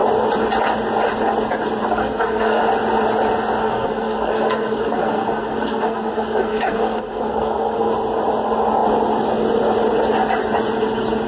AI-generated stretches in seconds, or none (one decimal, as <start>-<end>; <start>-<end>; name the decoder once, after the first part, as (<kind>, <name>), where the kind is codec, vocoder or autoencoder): 2.0-2.6 (codec, SNAC); 3.6-7.9